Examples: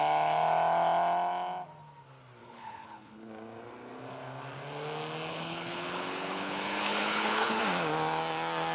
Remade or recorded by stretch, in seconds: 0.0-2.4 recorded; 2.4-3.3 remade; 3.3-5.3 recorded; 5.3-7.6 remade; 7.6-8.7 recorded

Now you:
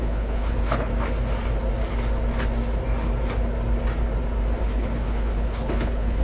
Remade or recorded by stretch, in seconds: 0.0-0.9 remade; 0.9-4.6 recorded; 4.6-6.2 remade

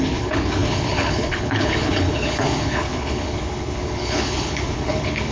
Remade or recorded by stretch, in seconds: 0.0-5.3 remade

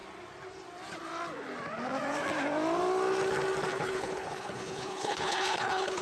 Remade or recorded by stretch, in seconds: 0.0-3.7 recorded; 3.7-6.0 remade

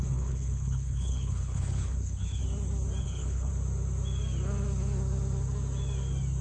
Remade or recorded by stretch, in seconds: 0.0-2.4 remade; 2.4-3.0 recorded; 3.0-3.5 remade; 3.5-6.4 recorded

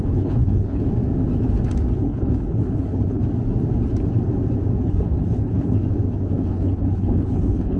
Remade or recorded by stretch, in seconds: 0.0-0.8 remade; 0.8-2.0 recorded; 2.0-3.2 remade; 3.2-4.8 recorded; 4.8-5.8 remade; 5.8-6.3 recorded; 6.3-7.8 remade

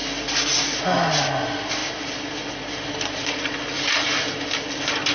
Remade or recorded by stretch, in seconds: 0.0-5.1 recorded

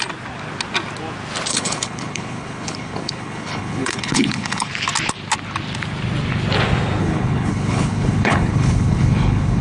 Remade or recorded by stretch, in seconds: 0.0-1.5 recorded; 1.5-4.7 remade; 4.7-7.0 recorded; 7.0-9.6 remade